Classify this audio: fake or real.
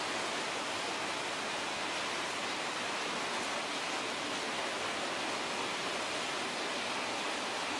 real